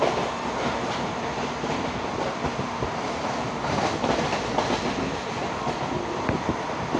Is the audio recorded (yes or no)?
yes